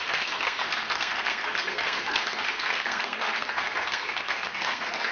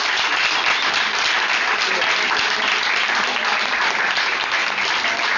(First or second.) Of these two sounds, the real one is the second